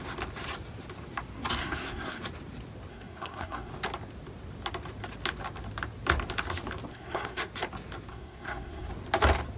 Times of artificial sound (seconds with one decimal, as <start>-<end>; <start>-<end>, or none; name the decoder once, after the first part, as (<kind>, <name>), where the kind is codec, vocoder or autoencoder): 1.6-2.2 (codec, SNAC); 2.9-3.7; 6.9-7.5; 8.1-8.9